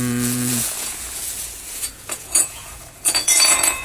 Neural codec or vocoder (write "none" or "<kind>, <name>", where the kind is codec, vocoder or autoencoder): vocoder, Vocos